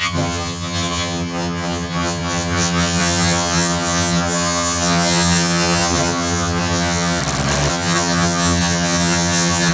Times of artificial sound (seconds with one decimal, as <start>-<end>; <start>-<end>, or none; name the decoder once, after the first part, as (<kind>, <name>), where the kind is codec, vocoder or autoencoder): 0.0-7.2 (vocoder, HiFi-GAN); 7.7-9.7